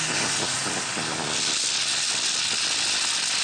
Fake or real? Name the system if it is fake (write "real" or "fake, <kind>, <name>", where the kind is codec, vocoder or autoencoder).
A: real